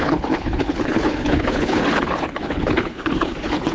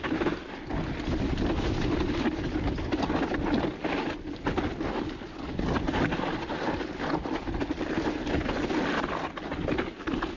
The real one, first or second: second